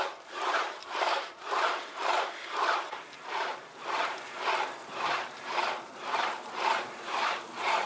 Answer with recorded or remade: remade